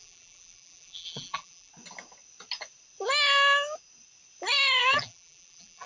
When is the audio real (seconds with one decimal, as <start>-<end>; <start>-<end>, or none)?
1.7-4.8